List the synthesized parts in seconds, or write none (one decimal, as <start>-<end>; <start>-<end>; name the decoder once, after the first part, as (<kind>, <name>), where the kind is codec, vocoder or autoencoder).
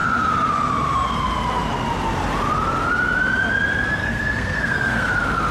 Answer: 4.0-5.1 (codec, SNAC)